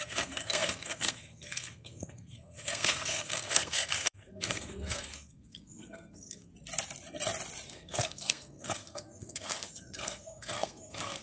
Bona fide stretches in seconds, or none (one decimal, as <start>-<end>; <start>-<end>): 6.5-7.7

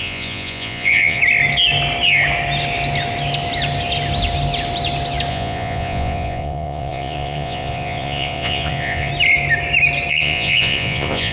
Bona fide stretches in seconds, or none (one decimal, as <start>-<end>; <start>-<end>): 1.2-5.3; 9.1-10.1

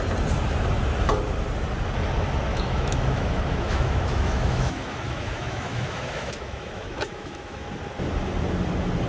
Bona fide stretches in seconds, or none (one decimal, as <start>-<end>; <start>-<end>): 0.0-2.5; 7.7-9.1

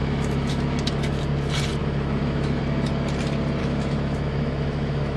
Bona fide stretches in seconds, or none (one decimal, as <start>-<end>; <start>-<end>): 1.2-1.8; 2.6-3.6